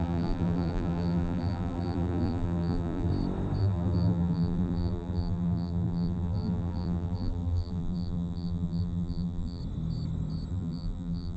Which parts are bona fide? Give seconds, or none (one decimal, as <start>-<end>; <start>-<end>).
3.1-3.6; 9.6-10.5